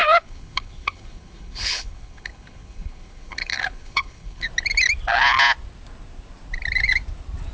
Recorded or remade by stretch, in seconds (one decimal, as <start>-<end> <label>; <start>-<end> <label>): 0.0-4.5 remade; 4.5-7.5 recorded